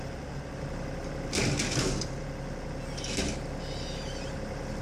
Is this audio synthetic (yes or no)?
no